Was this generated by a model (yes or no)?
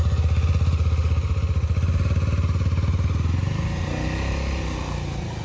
no